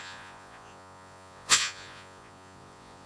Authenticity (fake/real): fake